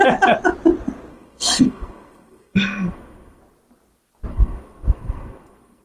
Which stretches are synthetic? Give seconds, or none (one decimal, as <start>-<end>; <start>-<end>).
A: 1.1-3.4; 4.3-5.8